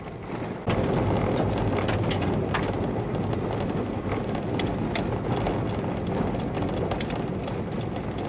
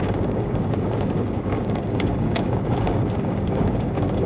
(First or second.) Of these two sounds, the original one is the first